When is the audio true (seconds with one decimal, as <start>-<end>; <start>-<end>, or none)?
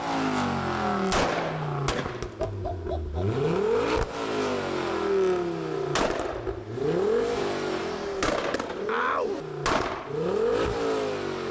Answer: 0.0-11.5